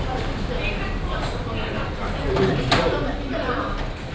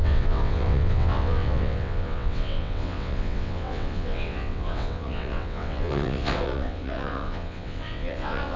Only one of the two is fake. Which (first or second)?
second